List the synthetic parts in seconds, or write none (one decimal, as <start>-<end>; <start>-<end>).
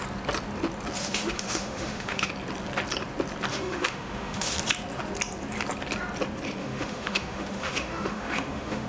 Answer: 1.0-2.3; 3.5-4.5; 6.6-8.9